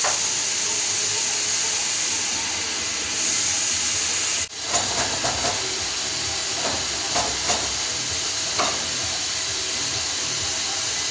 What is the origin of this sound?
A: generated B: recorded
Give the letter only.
B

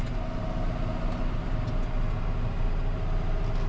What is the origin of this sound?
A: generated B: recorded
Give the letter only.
B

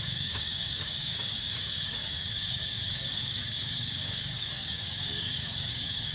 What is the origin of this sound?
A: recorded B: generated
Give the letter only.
B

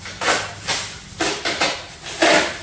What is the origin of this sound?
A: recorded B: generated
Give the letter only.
A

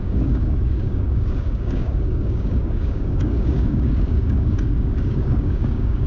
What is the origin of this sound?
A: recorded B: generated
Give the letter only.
B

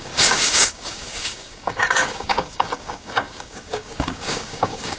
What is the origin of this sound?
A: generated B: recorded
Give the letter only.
A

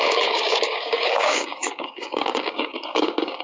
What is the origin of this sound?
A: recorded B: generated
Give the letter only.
B